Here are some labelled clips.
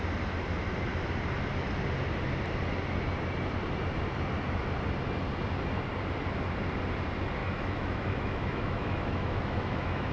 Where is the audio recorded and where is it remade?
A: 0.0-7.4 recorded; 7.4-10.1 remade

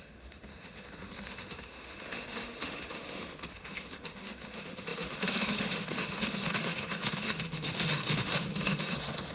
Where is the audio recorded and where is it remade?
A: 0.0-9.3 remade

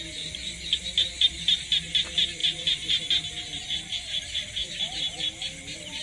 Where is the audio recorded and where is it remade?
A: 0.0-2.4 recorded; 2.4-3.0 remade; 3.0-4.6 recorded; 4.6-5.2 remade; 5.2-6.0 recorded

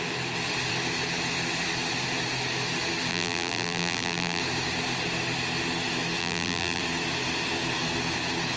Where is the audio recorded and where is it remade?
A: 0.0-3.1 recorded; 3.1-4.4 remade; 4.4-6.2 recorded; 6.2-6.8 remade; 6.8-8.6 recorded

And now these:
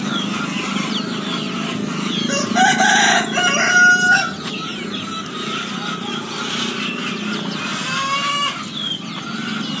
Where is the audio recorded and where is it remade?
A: 0.0-9.8 recorded